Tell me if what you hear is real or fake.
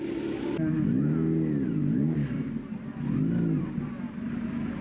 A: real